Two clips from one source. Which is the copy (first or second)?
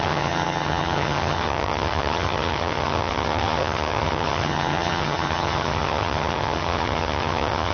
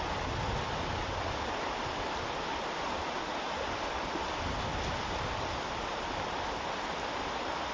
first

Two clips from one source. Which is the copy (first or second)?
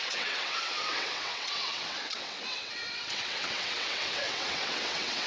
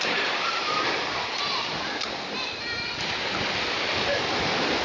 first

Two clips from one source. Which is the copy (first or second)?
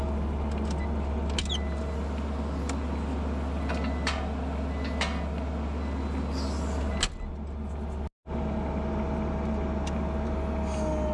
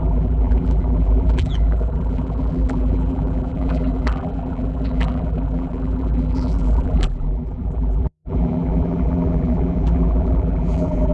second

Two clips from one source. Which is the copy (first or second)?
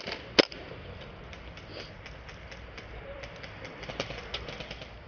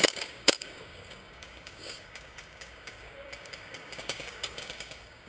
second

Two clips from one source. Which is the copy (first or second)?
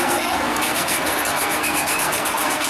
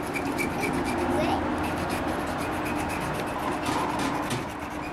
first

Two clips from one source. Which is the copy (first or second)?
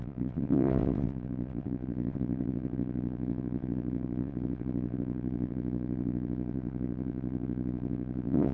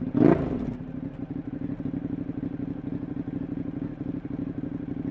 first